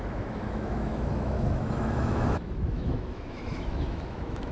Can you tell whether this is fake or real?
fake